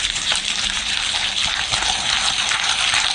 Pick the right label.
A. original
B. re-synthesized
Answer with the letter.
B